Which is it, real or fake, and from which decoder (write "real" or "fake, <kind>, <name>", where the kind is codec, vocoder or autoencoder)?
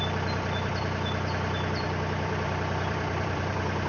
fake, vocoder, BigVGAN v2